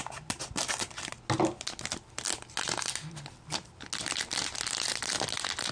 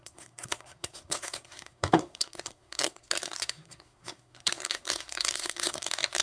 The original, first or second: first